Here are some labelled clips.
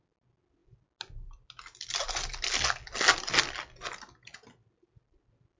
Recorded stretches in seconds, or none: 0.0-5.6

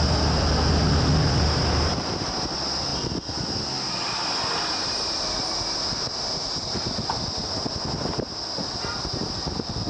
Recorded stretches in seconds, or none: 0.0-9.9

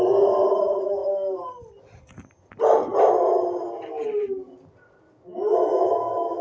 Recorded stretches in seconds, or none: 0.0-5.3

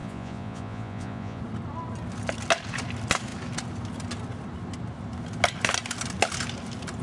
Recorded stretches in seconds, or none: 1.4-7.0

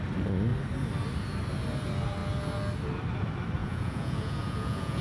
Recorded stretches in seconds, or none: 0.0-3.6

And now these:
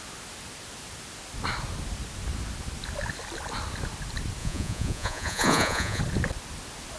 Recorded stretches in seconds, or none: 0.0-4.4; 6.0-7.0

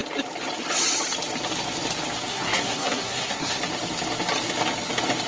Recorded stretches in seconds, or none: 0.0-2.3; 3.6-5.3